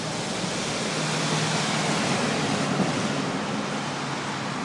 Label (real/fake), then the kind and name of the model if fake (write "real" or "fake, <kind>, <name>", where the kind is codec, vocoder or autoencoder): real